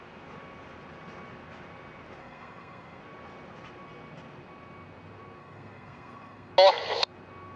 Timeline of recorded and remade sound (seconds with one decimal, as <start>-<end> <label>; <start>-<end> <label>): 0.0-2.2 recorded; 2.2-3.0 remade; 3.0-5.4 recorded; 5.4-6.5 remade; 6.5-7.6 recorded